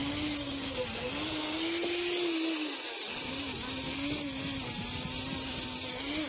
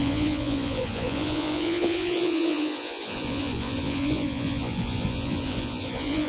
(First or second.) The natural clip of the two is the first